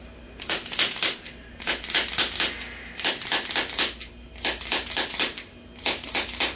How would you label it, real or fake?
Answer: real